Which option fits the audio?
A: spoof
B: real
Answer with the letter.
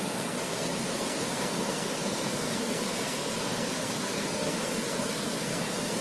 A